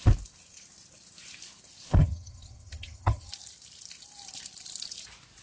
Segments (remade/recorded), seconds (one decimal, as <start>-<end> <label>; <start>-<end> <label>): 0.0-2.0 recorded; 2.0-3.3 remade; 3.3-5.4 recorded